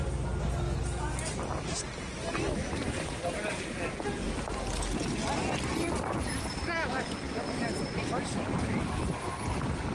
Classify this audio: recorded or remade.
recorded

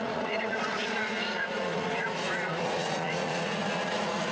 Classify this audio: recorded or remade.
remade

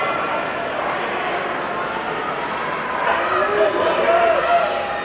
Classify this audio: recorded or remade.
recorded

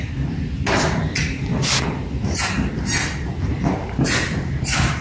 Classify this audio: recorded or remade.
recorded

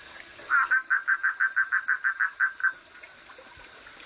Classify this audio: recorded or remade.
recorded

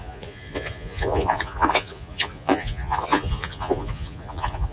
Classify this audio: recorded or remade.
remade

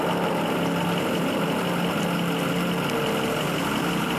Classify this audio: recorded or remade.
recorded